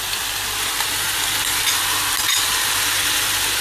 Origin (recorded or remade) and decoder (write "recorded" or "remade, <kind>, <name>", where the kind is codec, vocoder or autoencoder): recorded